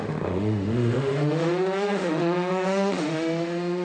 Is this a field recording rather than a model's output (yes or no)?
no